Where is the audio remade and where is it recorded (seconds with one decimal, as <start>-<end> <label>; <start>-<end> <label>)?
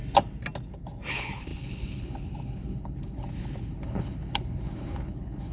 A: 0.0-1.1 recorded; 1.1-5.5 remade